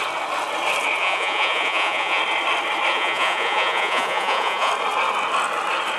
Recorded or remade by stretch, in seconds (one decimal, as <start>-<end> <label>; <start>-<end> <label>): 0.0-1.0 recorded; 1.0-2.2 remade; 2.2-2.9 recorded; 2.9-4.7 remade; 4.7-6.0 recorded